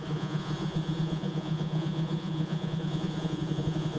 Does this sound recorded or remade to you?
remade